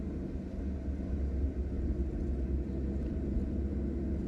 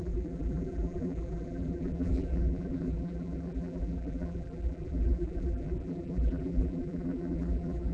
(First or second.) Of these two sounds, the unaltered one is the first